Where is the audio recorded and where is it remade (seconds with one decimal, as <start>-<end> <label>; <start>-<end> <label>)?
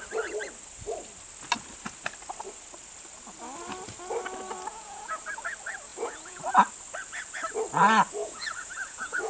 0.0-4.7 recorded; 4.7-5.2 remade; 5.2-5.9 recorded; 5.9-6.4 remade; 6.4-8.2 recorded; 8.2-9.3 remade